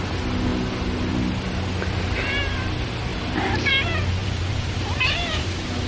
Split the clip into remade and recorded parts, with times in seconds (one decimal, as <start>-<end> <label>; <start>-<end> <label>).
0.0-3.1 recorded; 3.1-3.7 remade; 3.7-4.2 recorded; 4.2-5.4 remade; 5.4-5.9 recorded